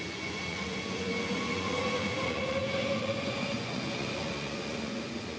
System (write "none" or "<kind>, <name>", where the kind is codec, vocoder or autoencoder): vocoder, Vocos